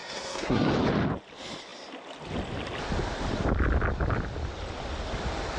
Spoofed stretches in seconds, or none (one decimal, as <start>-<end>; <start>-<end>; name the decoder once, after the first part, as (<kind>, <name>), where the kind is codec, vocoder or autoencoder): 0.0-0.7 (codec, SNAC)